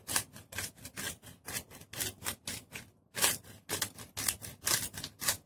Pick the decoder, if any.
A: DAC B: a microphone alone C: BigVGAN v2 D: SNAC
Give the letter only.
B